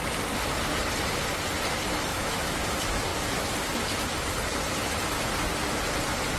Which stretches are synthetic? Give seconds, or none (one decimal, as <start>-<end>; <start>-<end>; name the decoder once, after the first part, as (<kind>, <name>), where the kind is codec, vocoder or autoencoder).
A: 2.1-2.6 (autoencoder, DAC-VAE)